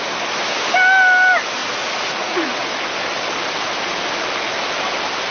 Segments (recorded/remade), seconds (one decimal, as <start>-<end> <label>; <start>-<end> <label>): 0.0-1.6 recorded; 1.6-2.7 remade; 2.7-5.3 recorded